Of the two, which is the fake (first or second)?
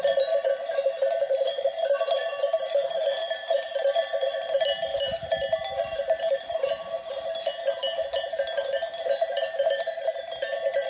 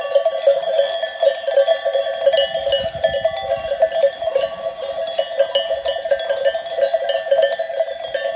first